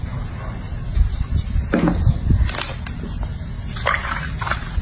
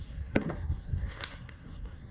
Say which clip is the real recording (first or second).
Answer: first